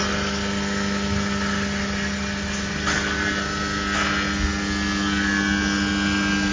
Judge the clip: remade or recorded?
recorded